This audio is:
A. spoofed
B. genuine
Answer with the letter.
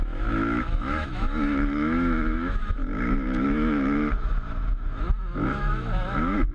A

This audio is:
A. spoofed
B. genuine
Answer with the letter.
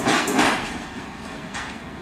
A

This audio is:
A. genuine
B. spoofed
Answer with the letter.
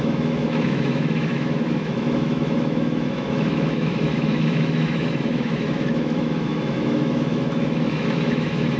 B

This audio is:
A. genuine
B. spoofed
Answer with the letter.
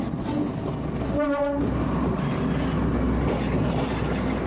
A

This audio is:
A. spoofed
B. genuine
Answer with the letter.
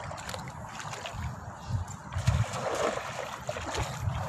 B